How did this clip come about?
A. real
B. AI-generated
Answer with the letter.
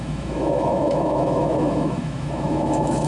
B